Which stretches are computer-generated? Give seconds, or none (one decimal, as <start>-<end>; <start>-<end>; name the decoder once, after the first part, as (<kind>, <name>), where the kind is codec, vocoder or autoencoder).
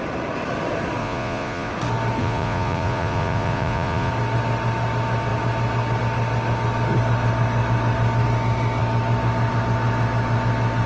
1.0-1.7 (vocoder, Vocos); 2.2-4.1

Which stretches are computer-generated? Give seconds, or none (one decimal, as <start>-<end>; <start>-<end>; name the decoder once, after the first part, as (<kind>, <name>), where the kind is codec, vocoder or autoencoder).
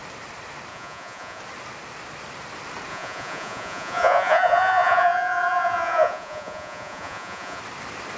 0.7-1.4 (vocoder, Vocos); 2.9-7.6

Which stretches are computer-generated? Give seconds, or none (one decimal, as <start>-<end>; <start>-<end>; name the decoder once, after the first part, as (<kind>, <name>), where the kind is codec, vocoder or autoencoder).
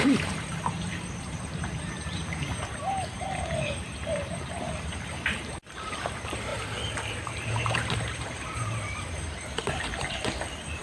0.0-6.5 (vocoder, BigVGAN v2); 7.1-10.8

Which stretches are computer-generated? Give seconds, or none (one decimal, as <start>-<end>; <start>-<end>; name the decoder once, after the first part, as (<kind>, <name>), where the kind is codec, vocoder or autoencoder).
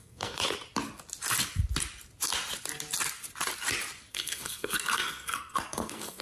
0.0-0.4 (codec, SNAC); 4.1-6.2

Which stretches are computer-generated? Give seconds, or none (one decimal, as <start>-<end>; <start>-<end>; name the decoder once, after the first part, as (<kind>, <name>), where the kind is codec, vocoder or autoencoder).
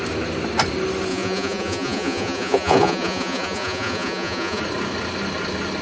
1.1-4.6 (vocoder, Vocos)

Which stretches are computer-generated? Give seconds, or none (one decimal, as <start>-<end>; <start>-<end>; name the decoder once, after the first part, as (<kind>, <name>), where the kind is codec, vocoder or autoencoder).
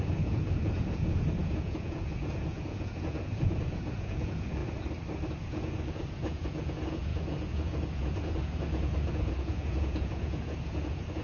0.0-4.6 (vocoder, Vocos); 5.3-11.2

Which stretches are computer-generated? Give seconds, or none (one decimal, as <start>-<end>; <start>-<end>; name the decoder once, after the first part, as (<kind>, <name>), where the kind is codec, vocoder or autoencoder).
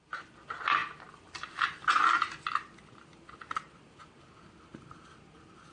none